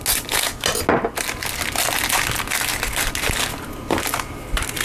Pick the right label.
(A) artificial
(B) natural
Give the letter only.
B